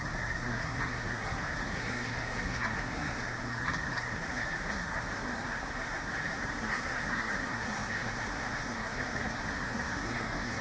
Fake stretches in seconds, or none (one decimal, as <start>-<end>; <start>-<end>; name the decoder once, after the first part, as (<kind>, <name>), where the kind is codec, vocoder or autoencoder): 0.0-10.6 (codec, SNAC)